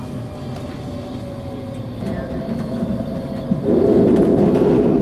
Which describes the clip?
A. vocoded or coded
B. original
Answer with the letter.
B